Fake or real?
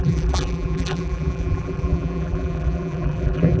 fake